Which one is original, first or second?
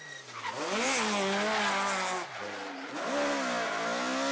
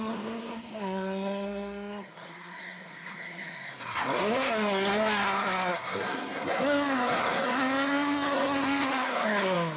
first